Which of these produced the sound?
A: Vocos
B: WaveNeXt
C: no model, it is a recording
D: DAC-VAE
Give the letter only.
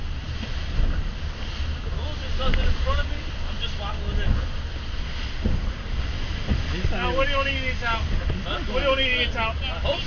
C